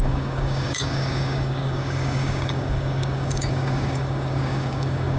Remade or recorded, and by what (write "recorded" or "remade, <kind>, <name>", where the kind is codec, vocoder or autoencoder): remade, codec, DAC